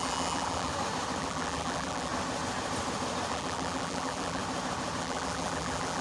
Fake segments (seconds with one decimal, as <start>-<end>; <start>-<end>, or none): 0.0-0.7; 1.2-2.1; 3.3-4.4; 5.0-6.0